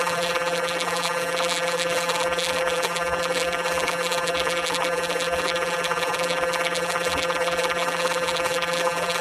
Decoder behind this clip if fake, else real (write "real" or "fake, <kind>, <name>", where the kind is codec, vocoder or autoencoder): fake, vocoder, BigVGAN v2